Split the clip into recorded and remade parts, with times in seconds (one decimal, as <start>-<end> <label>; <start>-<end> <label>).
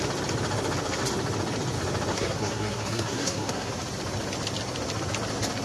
0.0-2.1 recorded; 2.1-3.7 remade; 3.7-5.6 recorded